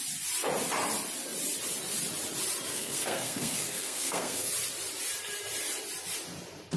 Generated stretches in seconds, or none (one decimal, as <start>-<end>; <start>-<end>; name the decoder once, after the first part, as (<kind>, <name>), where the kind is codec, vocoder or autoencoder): 2.7-4.5 (codec, SNAC)